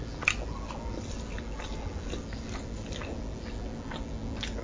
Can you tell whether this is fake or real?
real